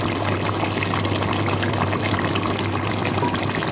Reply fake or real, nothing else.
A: real